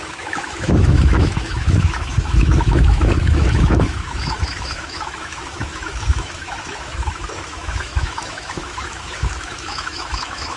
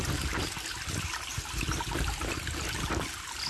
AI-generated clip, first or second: first